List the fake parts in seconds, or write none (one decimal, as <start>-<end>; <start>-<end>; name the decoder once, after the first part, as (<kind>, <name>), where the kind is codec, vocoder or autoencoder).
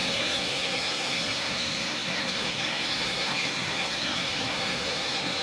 0.0-5.4 (codec, SNAC)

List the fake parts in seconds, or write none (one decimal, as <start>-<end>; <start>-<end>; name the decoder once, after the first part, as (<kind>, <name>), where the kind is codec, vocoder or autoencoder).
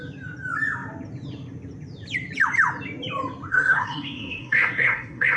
3.5-5.4 (codec, SNAC)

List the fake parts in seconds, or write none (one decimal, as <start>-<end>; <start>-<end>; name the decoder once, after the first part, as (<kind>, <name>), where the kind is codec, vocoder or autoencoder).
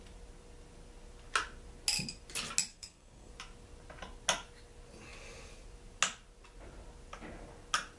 2.7-3.3 (codec, SNAC)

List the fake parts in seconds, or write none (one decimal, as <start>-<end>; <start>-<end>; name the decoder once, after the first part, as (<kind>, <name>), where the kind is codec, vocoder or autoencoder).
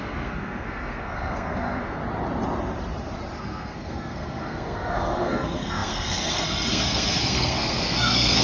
0.0-2.0 (codec, SNAC); 3.4-8.4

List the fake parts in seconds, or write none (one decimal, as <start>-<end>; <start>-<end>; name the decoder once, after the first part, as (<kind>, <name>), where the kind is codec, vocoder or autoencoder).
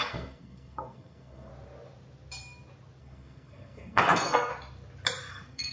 0.0-1.5 (codec, SNAC); 3.0-4.5; 5.3-5.7